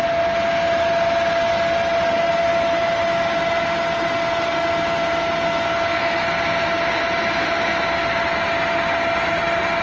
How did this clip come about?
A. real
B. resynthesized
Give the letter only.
A